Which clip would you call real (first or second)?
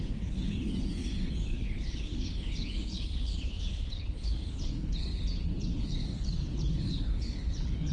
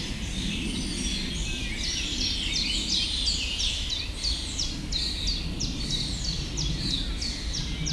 second